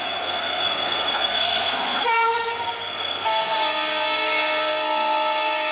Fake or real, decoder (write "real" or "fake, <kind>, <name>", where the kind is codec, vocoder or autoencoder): fake, codec, SNAC